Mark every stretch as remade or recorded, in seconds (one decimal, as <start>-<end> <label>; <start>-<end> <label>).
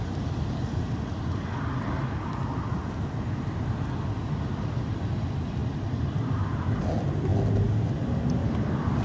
0.0-9.0 recorded